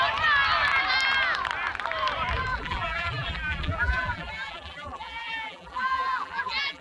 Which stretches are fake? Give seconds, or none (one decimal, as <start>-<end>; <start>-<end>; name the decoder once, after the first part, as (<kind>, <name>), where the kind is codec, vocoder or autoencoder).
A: 2.5-6.8 (vocoder, BigVGAN v2)